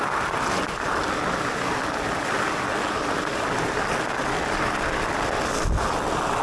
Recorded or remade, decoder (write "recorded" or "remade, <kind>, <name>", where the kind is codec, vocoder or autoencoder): recorded